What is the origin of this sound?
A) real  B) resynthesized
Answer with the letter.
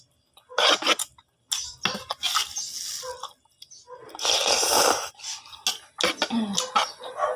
A